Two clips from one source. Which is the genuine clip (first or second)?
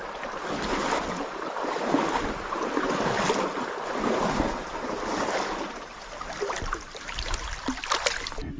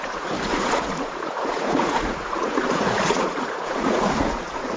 first